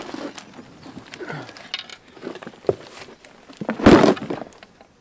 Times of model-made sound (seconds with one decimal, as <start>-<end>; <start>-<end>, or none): none